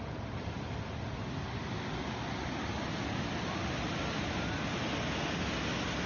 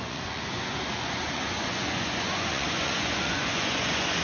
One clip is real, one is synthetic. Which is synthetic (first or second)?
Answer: second